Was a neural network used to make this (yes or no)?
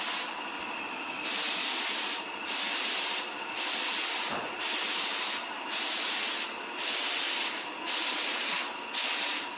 no